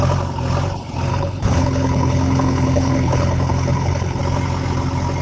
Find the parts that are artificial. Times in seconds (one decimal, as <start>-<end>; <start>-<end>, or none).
1.1-4.2